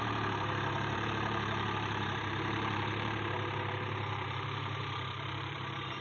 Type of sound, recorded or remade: remade